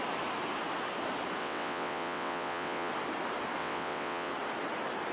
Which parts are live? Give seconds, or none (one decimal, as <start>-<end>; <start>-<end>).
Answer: 0.0-1.4; 2.9-3.6; 4.3-5.1